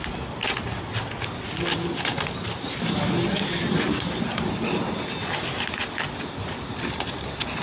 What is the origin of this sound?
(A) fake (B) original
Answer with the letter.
B